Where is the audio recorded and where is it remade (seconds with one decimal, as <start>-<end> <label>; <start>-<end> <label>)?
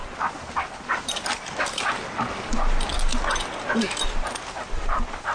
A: 0.0-5.3 recorded